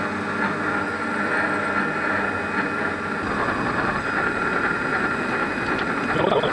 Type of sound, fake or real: real